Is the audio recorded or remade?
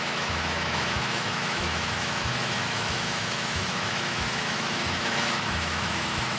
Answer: remade